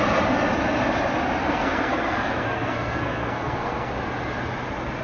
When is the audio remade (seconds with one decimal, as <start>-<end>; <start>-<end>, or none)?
1.4-3.9